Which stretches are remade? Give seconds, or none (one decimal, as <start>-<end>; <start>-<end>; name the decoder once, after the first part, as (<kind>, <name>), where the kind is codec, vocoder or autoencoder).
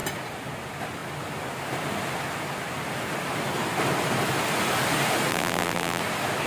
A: 5.3-6.0 (vocoder, BigVGAN v2)